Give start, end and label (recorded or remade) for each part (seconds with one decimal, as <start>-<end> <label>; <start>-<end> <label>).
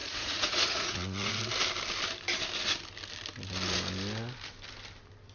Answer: 0.0-1.4 remade; 1.4-5.3 recorded